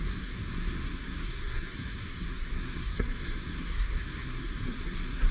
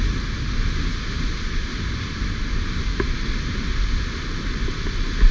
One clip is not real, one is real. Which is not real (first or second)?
first